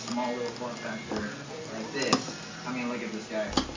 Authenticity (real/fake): real